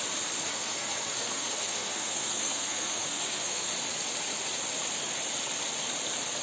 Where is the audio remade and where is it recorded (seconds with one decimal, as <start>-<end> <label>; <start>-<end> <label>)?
0.0-0.5 recorded; 0.5-3.7 remade; 3.7-6.4 recorded